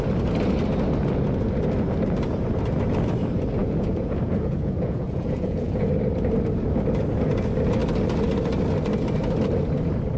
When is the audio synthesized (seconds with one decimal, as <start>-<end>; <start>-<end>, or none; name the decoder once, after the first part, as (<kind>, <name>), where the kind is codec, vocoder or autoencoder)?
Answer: 3.6-5.9 (vocoder, Vocos)